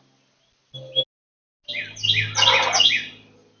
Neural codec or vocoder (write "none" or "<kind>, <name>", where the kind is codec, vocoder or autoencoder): none